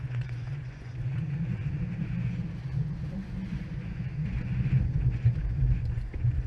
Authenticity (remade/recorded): remade